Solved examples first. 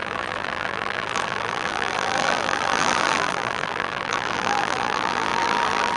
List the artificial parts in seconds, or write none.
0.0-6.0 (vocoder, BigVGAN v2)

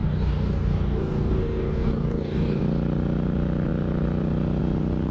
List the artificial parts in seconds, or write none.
0.0-2.6 (codec, DAC)

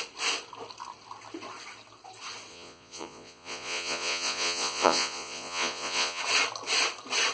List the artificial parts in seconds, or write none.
2.5-6.2 (vocoder, Vocos)

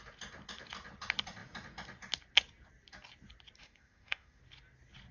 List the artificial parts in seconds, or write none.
3.6-4.4 (autoencoder, DAC-VAE)

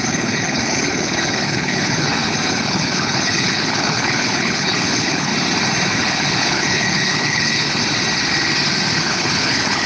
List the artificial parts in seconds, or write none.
0.0-5.3 (codec, HILCodec); 5.9-7.8; 9.0-9.9

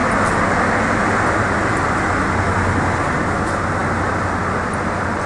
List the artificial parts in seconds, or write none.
none

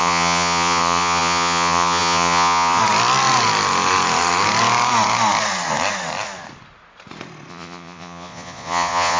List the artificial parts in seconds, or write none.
0.0-2.8 (vocoder, Vocos); 7.5-9.2

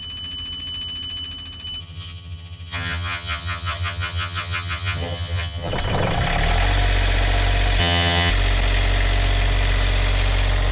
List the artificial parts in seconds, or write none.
1.8-5.7 (vocoder, HiFi-GAN); 7.8-8.3